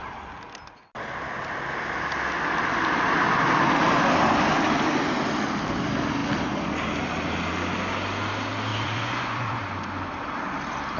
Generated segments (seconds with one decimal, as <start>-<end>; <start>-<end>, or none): 8.7-9.6